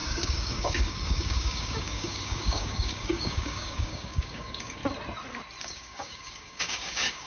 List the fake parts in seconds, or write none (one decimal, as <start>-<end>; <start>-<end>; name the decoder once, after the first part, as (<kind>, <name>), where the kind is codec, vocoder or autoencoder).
0.0-4.8 (codec, DAC); 5.6-7.3